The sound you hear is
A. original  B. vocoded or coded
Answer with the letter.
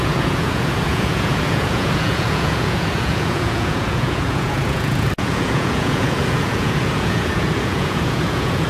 B